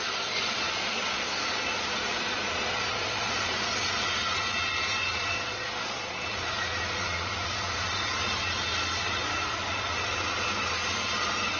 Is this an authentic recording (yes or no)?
no